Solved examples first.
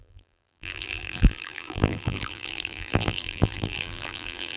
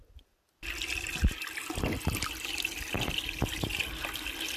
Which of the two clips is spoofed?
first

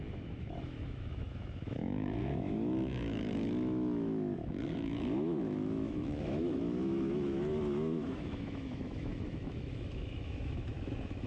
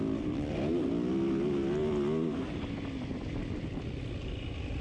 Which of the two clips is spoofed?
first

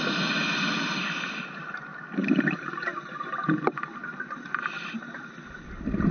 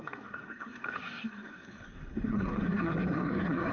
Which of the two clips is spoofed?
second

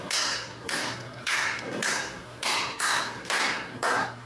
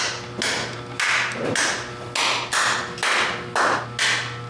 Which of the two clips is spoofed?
first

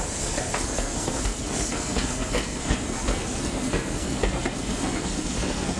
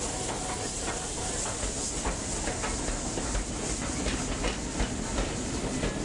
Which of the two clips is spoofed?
first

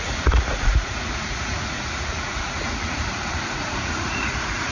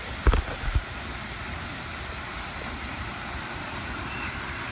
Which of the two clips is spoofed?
first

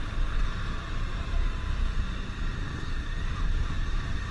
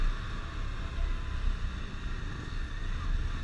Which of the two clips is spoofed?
first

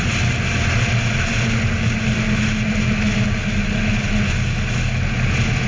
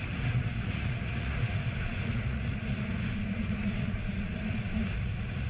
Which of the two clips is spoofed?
second